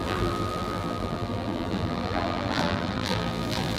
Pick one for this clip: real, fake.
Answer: fake